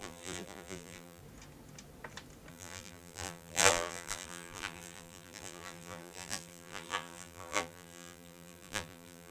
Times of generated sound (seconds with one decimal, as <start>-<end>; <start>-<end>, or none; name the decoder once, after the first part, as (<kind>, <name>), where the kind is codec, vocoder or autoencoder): 0.0-1.2 (vocoder, BigVGAN v2); 2.5-9.3